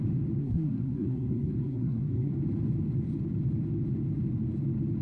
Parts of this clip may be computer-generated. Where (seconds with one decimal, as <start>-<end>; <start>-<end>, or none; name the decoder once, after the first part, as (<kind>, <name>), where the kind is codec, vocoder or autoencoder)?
0.4-2.3 (codec, SNAC)